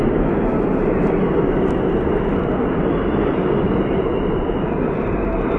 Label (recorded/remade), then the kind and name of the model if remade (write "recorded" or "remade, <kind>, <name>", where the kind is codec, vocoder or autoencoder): recorded